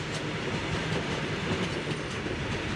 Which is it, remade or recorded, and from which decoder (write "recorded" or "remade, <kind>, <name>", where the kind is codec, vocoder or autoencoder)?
recorded